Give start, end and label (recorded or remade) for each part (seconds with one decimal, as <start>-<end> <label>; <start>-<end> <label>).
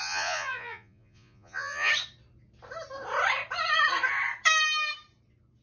0.0-1.9 remade; 1.9-5.6 recorded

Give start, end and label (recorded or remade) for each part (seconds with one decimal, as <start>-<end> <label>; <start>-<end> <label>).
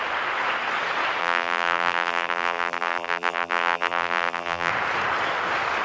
0.0-1.2 recorded; 1.2-4.7 remade; 4.7-5.8 recorded